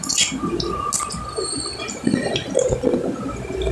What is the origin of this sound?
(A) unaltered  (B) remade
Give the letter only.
A